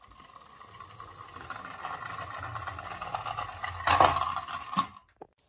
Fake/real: real